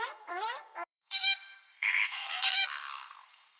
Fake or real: fake